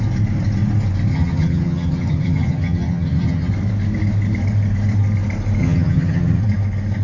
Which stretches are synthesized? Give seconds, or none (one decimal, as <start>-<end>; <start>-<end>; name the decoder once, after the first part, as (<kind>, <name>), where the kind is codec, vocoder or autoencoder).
1.1-3.5 (vocoder, HiFi-GAN); 5.6-6.4